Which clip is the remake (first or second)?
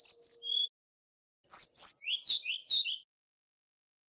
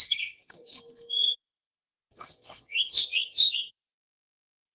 second